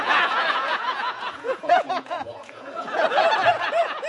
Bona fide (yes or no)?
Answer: no